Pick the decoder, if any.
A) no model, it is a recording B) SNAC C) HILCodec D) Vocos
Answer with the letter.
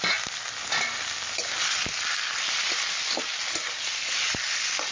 A